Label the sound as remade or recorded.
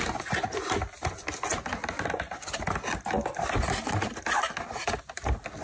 recorded